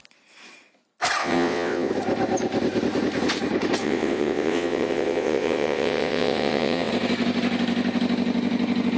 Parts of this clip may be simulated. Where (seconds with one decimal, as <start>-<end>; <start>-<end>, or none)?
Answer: 1.2-1.9; 3.8-6.9